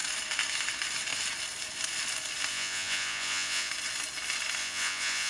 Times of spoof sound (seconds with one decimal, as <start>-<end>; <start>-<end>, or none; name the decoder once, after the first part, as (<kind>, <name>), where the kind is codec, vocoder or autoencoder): 2.5-3.7 (vocoder, Vocos); 4.6-5.3